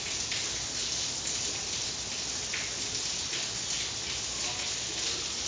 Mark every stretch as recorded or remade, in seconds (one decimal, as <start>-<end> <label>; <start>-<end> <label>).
0.0-5.5 recorded